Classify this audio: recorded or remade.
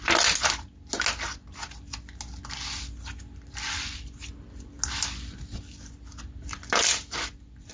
recorded